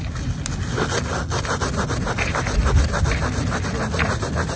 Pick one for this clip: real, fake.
real